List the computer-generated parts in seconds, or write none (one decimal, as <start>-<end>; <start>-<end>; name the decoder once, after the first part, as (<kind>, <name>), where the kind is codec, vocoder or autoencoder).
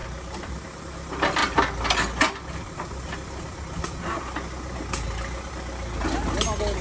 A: none